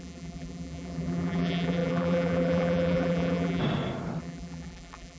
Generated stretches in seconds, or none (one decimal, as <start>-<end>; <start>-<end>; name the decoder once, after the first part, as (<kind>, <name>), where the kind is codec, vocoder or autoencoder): 0.0-3.6 (vocoder, BigVGAN v2); 4.2-5.2